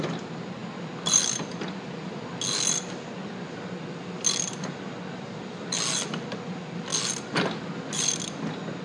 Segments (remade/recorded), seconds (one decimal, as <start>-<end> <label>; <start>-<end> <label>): 0.0-8.8 recorded